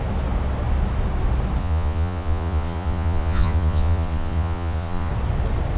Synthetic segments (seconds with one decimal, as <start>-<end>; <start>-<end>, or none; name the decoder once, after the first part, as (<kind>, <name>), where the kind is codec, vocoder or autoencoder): 1.6-5.1 (vocoder, Vocos)